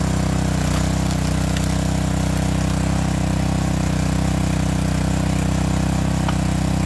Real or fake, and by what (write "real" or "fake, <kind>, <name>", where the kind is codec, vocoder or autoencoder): real